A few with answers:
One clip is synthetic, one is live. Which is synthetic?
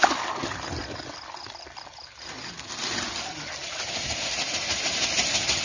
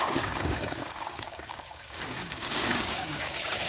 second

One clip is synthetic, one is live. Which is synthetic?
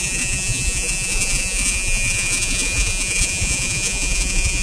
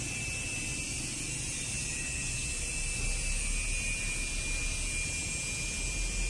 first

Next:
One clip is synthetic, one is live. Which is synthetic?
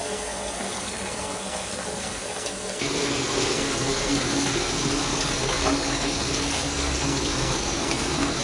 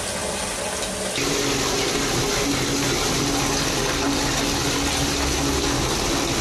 first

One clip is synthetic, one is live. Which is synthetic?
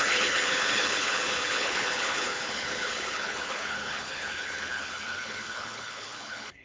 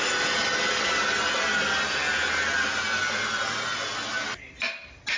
first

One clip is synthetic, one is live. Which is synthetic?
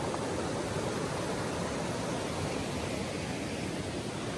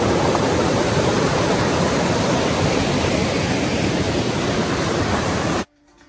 second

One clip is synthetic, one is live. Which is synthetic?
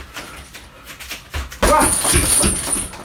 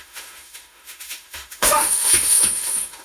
second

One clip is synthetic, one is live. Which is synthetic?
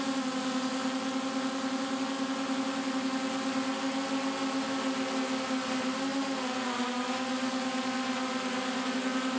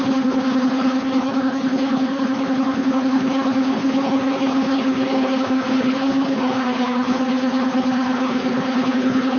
second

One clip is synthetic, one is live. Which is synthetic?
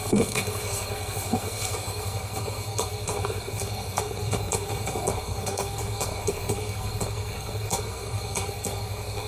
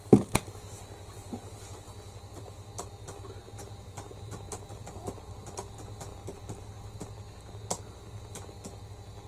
first